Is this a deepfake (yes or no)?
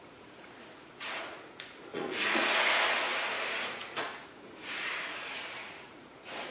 yes